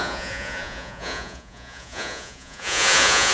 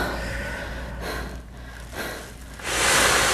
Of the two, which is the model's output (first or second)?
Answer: first